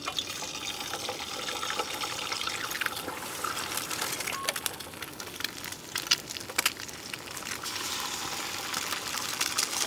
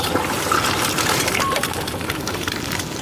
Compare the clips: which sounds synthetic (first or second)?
second